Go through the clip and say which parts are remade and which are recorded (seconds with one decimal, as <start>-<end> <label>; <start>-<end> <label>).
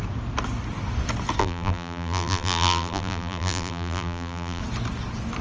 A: 0.0-1.4 recorded; 1.4-4.6 remade; 4.6-5.4 recorded